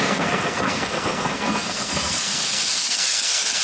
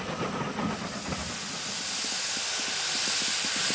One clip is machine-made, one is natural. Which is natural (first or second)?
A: second